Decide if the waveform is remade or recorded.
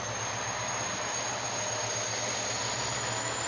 remade